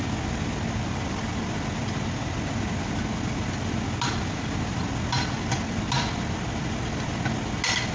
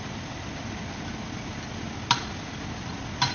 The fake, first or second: second